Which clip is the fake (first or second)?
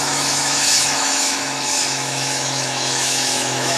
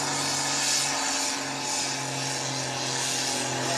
first